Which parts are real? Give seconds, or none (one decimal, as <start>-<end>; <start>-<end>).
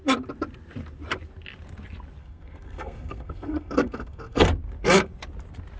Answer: 0.0-2.2; 4.5-5.8